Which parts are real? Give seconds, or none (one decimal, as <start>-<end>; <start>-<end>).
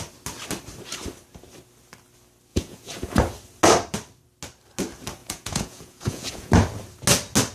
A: 0.0-2.5; 3.2-5.2; 6.5-7.5